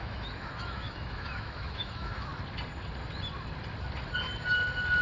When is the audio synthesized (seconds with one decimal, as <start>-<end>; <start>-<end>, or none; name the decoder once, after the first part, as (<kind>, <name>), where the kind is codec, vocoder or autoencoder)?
0.0-2.3 (autoencoder, DAC-VAE)